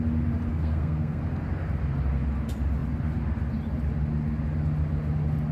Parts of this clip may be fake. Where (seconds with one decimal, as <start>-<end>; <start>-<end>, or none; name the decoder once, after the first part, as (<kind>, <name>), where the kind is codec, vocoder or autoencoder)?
0.5-1.2 (codec, SNAC)